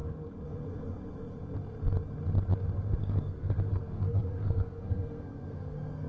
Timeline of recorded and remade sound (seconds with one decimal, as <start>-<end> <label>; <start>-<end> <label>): 0.0-3.0 recorded; 3.0-6.1 remade